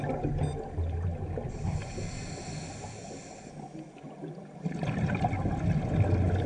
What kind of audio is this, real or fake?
real